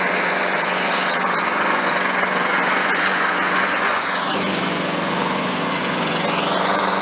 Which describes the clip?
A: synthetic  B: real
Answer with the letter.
A